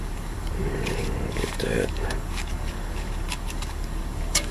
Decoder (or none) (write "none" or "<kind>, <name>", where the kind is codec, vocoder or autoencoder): codec, DAC